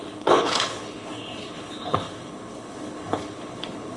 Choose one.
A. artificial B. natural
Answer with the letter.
A